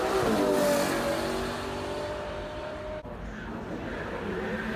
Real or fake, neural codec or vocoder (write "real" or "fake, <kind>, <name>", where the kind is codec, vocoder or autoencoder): real